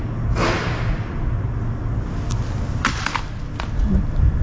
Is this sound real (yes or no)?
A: yes